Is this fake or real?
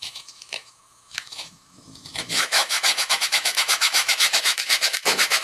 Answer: fake